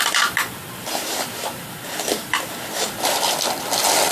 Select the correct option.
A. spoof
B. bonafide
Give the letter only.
A